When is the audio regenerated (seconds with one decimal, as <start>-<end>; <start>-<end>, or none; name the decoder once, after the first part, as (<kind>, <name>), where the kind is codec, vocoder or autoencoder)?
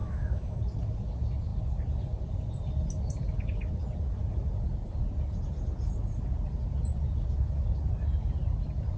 0.0-0.6 (autoencoder, DAC-VAE)